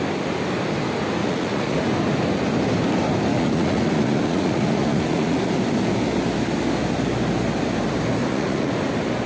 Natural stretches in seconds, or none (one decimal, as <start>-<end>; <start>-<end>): 0.0-1.2; 1.8-3.3; 5.4-8.2; 8.7-9.3